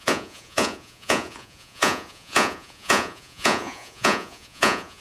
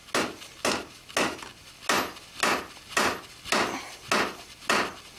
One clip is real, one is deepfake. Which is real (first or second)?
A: second